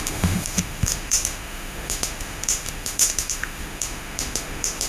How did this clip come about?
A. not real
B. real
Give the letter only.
A